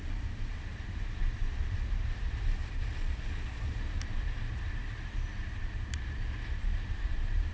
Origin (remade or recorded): remade